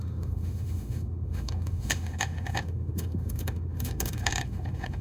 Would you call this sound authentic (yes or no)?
no